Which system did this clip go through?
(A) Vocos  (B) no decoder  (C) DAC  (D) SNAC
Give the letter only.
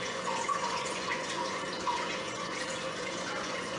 A